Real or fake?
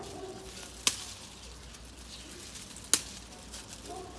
real